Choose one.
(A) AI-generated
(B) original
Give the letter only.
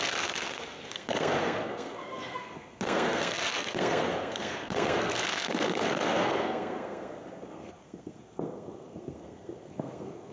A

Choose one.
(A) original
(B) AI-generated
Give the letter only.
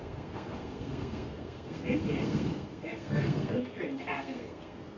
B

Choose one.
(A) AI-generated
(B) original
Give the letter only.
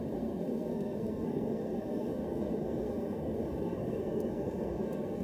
A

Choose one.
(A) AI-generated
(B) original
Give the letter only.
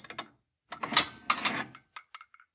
B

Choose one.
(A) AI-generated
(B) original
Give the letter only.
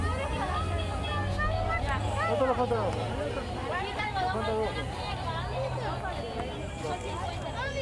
B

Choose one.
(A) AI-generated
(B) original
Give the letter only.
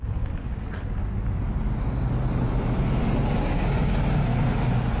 B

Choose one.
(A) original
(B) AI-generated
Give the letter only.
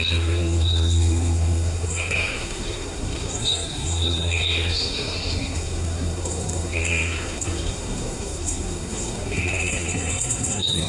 B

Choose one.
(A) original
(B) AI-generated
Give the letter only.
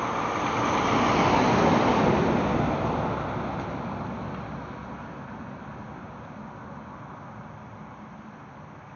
A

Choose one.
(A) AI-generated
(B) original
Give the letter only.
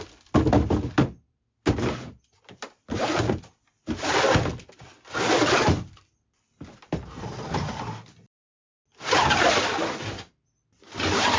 B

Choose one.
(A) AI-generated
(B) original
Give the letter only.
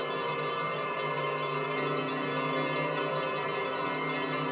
B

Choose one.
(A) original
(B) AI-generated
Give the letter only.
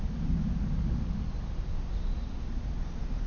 A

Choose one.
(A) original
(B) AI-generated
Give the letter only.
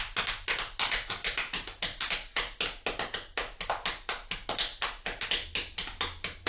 A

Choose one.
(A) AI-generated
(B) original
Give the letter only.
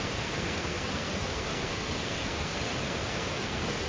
A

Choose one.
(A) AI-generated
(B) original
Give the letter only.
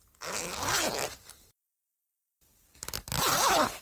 B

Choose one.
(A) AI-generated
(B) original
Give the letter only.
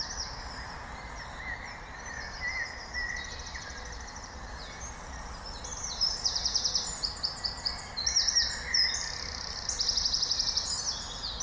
B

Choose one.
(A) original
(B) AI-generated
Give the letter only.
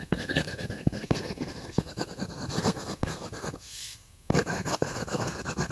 B